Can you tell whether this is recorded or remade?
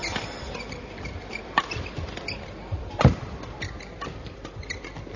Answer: remade